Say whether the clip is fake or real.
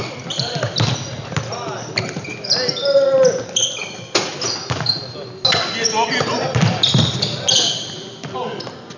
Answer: real